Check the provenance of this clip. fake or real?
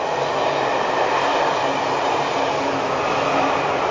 real